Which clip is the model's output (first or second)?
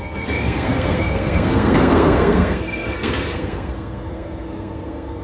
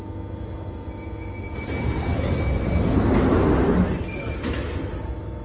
first